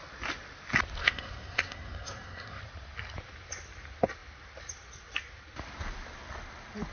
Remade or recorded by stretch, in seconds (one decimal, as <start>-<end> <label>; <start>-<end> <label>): 0.0-1.0 recorded; 1.0-2.6 remade; 2.6-6.9 recorded